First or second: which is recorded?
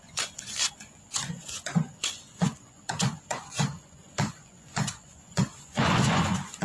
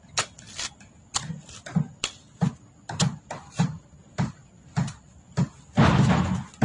second